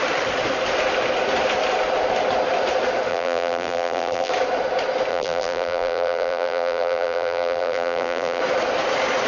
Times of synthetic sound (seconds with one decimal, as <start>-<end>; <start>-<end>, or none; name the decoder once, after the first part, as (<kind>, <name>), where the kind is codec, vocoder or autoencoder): 3.1-4.3 (vocoder, BigVGAN v2); 5.1-8.4